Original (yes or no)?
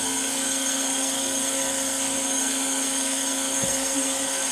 no